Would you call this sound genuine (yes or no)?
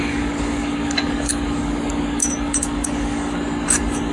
no